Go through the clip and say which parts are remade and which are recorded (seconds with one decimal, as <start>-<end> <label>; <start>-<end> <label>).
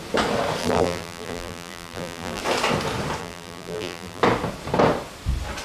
0.0-0.6 recorded; 0.6-2.4 remade; 2.4-3.2 recorded; 3.2-4.2 remade; 4.2-5.6 recorded